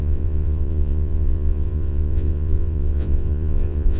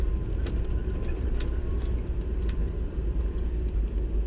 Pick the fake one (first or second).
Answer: first